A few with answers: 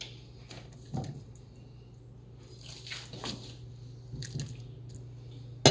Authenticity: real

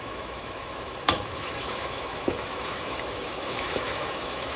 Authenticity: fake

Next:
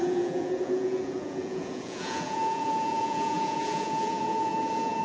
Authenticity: fake